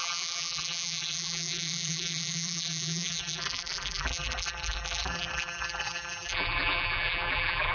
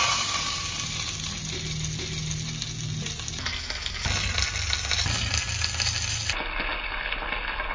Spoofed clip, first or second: first